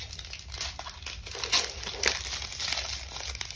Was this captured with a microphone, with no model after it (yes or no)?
yes